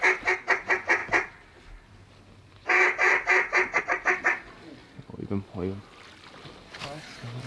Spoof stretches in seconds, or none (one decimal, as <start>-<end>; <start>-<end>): none